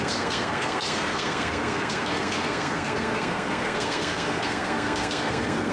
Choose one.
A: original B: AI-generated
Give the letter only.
B